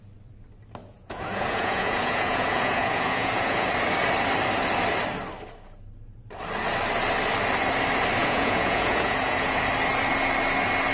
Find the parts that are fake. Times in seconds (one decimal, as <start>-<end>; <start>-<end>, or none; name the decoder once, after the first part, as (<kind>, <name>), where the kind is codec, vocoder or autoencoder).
0.8-3.7 (vocoder, Vocos); 8.2-9.6